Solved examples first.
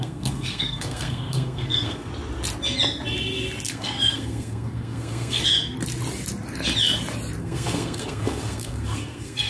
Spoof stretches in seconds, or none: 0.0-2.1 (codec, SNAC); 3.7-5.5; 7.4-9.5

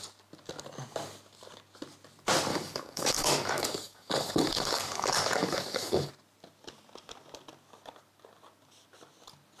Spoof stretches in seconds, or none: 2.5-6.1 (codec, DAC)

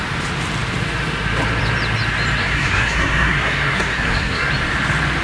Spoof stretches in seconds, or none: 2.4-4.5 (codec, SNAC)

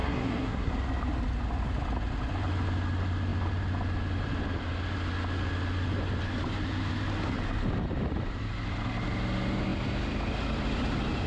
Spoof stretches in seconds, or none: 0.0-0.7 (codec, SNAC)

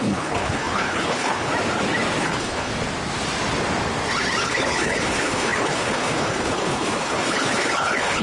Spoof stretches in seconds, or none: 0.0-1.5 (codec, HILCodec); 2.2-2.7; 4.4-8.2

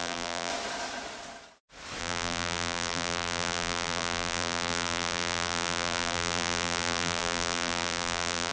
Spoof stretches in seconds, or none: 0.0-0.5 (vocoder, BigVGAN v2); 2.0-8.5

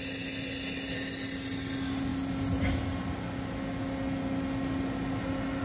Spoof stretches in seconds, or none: none

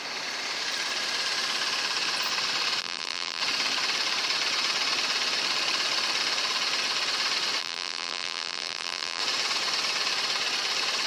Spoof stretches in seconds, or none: 2.8-3.4 (vocoder, BigVGAN v2); 7.6-9.2